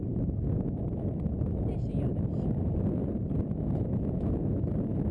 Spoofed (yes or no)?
no